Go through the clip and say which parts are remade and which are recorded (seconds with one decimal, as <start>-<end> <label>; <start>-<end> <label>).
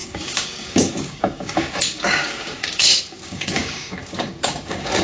0.0-5.0 remade